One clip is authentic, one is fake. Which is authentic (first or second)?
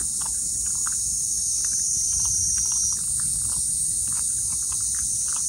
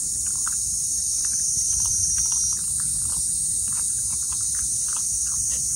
first